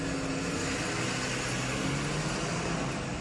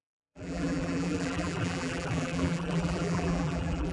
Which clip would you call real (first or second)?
first